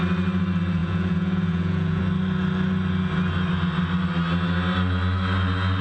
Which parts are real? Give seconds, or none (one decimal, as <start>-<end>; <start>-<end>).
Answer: 0.0-0.8; 2.0-5.8